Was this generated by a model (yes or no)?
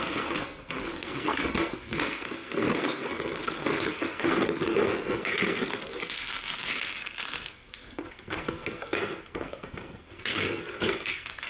yes